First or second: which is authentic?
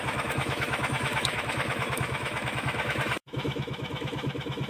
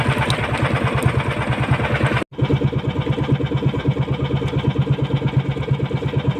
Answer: second